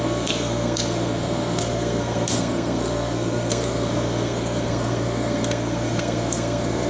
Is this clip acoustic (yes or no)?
no